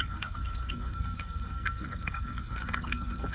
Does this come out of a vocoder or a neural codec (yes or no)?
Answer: yes